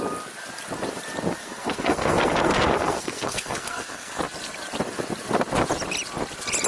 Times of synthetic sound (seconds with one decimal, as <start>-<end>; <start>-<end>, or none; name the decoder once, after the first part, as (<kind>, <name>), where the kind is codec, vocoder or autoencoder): 1.4-4.2 (codec, SNAC)